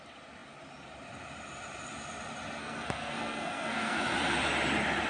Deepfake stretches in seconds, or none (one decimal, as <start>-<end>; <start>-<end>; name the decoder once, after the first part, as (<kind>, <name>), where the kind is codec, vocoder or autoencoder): 2.6-4.0 (codec, SNAC)